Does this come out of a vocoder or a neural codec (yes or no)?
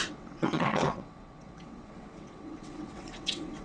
yes